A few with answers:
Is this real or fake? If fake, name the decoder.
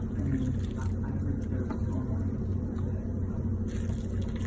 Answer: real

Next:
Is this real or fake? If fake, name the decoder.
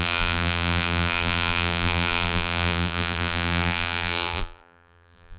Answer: fake, vocoder, BigVGAN v2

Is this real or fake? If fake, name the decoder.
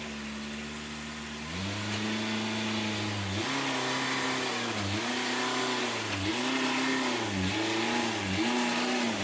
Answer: real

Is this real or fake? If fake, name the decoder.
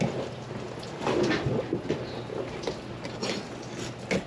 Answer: real